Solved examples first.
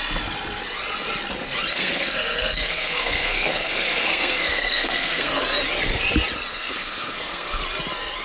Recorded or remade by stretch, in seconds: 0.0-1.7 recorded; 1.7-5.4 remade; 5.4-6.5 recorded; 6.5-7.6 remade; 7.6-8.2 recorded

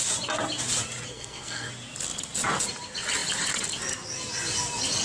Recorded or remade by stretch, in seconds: 0.0-1.1 recorded; 1.1-1.7 remade; 1.7-5.0 recorded